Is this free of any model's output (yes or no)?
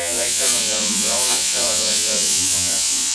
no